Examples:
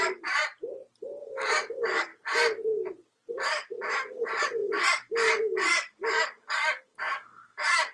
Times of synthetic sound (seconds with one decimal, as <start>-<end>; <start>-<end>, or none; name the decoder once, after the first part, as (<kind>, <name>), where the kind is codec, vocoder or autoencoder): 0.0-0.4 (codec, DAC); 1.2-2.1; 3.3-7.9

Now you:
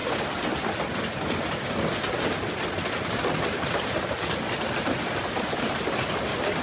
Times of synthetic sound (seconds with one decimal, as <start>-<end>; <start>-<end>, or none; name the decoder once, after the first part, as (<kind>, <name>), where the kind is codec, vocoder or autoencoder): none

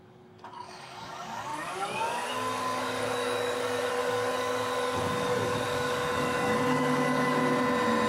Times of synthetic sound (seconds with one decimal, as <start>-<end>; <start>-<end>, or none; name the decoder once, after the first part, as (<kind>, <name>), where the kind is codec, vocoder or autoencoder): 0.0-7.4 (codec, DAC)

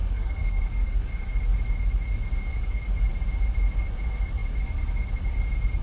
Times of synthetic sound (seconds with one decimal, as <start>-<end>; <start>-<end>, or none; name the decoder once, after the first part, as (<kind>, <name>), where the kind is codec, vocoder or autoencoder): 0.0-1.1 (codec, DAC); 2.5-3.1